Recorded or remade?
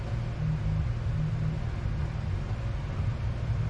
recorded